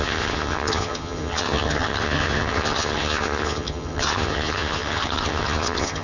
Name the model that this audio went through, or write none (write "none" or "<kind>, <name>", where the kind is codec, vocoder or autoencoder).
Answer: vocoder, HiFi-GAN